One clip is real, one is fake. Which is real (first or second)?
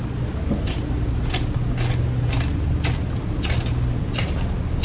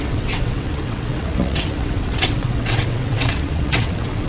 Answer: first